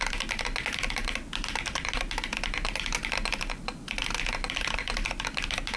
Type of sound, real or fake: real